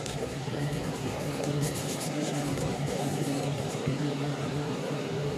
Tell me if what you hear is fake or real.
fake